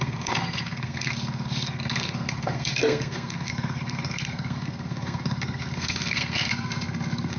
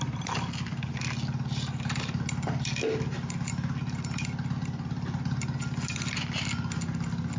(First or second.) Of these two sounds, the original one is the second